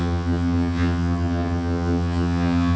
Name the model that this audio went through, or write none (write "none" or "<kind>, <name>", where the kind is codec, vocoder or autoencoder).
vocoder, HiFi-GAN